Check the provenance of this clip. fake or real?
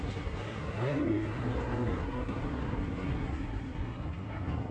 fake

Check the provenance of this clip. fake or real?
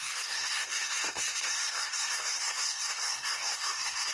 fake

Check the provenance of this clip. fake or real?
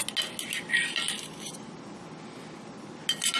real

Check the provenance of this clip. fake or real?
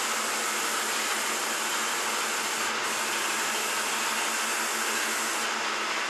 real